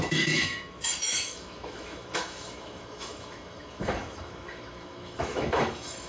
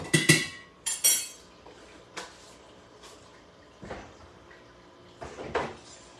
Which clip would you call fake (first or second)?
first